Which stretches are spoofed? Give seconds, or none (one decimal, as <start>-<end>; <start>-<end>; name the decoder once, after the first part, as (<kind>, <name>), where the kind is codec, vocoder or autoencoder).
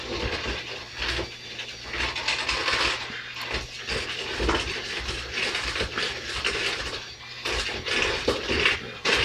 none